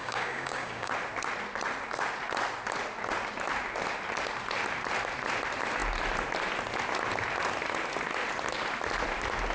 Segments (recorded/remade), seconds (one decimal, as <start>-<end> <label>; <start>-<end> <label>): 0.0-0.9 remade; 0.9-9.5 recorded